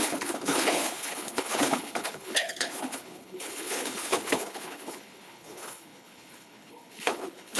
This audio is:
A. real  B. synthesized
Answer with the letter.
B